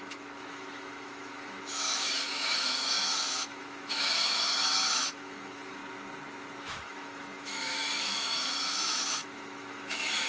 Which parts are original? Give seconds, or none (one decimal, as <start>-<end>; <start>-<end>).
5.8-6.6